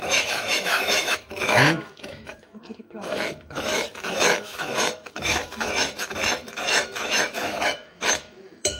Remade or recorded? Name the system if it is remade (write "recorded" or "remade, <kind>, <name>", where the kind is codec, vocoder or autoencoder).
remade, autoencoder, DAC-VAE